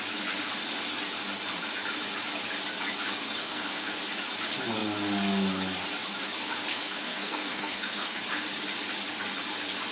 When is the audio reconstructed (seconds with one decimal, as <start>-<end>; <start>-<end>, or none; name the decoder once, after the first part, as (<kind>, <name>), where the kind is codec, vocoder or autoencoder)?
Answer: 3.4-4.0 (codec, SNAC); 6.7-8.2